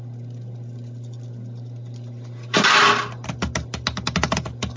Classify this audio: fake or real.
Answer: real